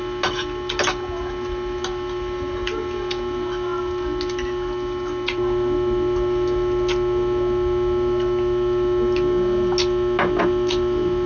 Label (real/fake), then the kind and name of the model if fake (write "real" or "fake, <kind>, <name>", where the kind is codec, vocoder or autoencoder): real